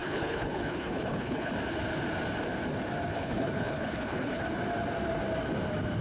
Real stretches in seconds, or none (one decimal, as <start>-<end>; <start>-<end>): 1.5-3.1; 4.4-6.0